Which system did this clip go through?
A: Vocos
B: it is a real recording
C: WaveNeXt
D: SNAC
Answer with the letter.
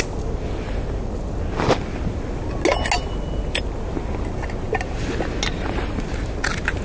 B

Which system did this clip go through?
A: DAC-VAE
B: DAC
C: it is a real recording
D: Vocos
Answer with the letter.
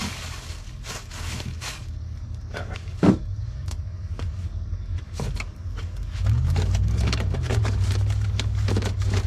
B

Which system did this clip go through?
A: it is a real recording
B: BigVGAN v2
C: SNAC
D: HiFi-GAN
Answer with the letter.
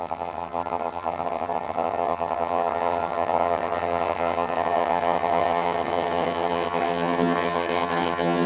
D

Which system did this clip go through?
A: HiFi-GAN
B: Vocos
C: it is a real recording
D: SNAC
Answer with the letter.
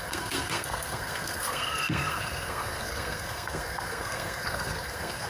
D